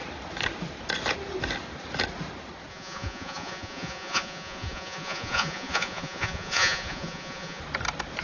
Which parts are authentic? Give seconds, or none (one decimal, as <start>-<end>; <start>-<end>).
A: 0.0-2.7; 7.6-8.2